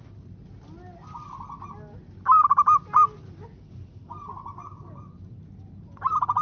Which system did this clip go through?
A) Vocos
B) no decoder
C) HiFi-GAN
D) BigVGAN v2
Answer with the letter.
B